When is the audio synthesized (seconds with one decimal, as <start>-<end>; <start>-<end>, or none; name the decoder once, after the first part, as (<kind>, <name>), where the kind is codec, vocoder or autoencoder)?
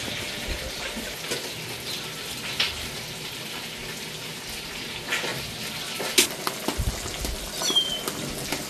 none